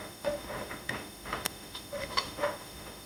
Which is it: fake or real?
fake